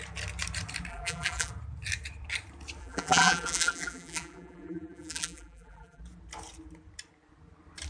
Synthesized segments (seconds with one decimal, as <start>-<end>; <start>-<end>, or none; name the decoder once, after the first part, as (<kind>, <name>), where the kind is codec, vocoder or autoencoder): 0.9-1.5 (vocoder, BigVGAN v2); 2.8-6.0